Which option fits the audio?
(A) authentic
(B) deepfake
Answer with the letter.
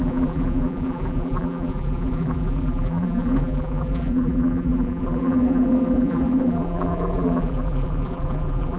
B